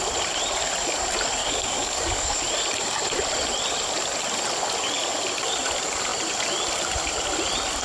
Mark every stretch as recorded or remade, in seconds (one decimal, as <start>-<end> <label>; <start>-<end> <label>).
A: 0.0-1.4 recorded; 1.4-2.4 remade; 2.4-7.8 recorded

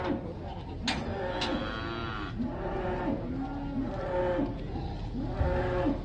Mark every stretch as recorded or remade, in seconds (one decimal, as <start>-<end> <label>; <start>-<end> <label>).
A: 0.0-6.0 recorded

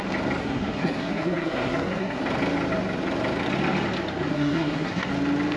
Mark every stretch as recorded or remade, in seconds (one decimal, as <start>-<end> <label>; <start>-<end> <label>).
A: 0.0-0.4 recorded; 0.4-2.2 remade; 2.2-4.3 recorded; 4.3-5.1 remade; 5.1-5.6 recorded

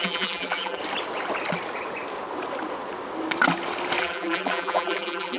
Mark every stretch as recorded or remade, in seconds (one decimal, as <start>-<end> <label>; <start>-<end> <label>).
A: 0.0-0.8 remade; 0.8-4.0 recorded; 4.0-5.4 remade

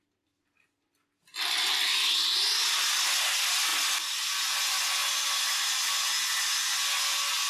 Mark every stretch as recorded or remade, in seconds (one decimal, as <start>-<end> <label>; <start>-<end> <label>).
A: 0.0-7.5 recorded

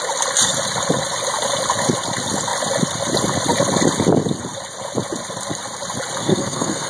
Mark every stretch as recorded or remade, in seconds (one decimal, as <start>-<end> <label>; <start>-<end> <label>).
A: 0.0-6.2 recorded; 6.2-6.9 remade